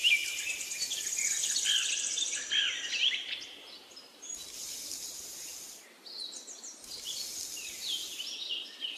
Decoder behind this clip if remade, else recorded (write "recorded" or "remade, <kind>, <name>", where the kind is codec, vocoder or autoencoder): recorded